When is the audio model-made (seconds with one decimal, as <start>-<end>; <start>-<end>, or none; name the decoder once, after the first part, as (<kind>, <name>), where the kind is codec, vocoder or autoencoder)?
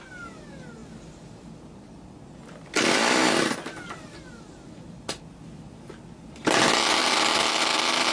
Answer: none